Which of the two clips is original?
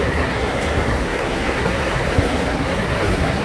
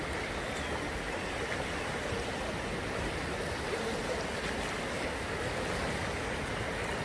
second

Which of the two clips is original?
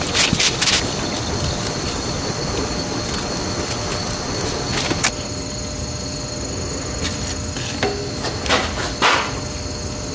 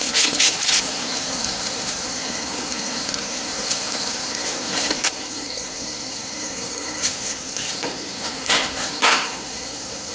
first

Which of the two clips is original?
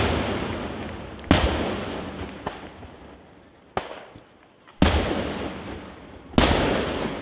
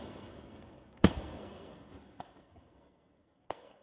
first